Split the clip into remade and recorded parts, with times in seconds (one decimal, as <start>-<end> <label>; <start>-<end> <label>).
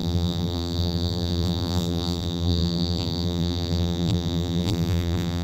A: 0.0-5.4 remade